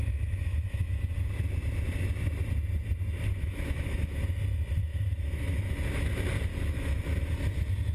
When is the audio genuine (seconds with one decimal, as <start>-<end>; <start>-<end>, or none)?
1.1-3.3; 4.2-4.8; 5.7-6.5; 7.3-7.9